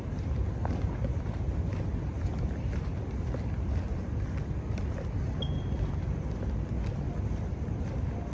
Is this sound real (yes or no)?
yes